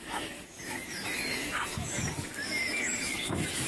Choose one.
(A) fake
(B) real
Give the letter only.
A